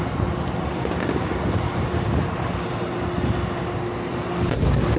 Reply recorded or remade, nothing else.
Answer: recorded